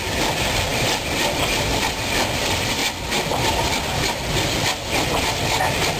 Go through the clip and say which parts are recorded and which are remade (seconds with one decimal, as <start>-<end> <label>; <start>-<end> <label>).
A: 0.0-6.0 recorded